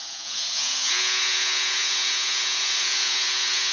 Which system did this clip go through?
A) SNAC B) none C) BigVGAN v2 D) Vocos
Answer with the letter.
D